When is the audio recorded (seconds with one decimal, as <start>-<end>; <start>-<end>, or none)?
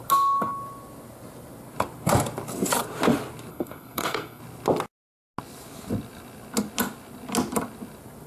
0.0-3.5; 4.4-8.3